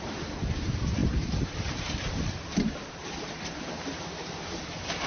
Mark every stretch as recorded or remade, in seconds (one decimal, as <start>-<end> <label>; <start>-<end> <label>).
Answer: 0.0-5.1 remade